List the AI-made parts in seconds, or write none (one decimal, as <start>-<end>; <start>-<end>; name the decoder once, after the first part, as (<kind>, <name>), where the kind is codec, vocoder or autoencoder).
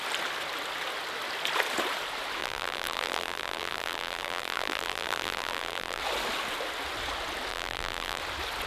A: 2.4-6.0 (vocoder, BigVGAN v2); 7.5-8.2